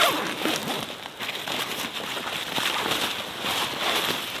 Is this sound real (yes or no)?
yes